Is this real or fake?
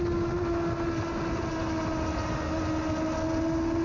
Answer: real